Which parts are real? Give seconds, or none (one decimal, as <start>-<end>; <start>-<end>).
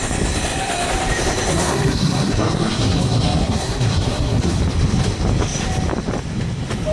0.0-1.5; 4.6-6.9